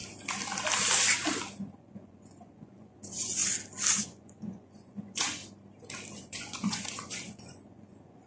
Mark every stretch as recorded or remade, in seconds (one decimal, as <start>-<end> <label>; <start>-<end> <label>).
0.0-1.7 recorded; 1.7-3.4 remade; 3.4-4.0 recorded; 4.0-5.4 remade; 5.4-6.1 recorded; 6.1-8.3 remade